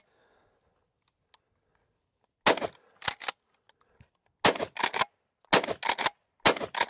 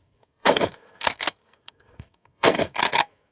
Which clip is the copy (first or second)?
second